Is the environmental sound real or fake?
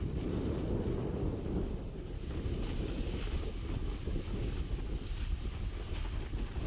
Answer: real